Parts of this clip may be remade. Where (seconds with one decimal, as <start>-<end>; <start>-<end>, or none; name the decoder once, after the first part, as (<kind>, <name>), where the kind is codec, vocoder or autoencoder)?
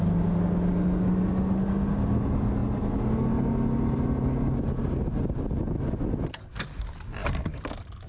none